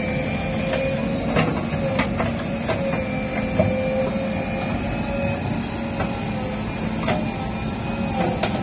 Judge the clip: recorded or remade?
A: recorded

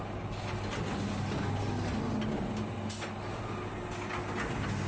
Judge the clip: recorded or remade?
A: recorded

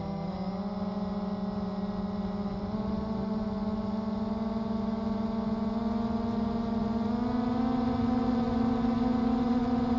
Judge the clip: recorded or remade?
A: recorded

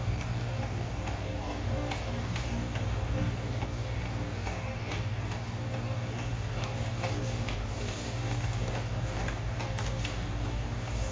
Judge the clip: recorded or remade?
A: remade